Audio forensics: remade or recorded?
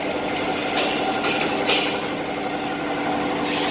recorded